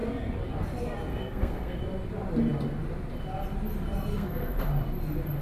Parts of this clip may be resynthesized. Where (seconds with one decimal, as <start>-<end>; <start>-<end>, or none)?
1.1-1.8; 4.1-4.7